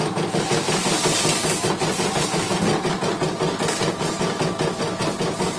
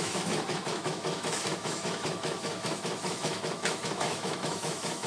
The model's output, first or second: second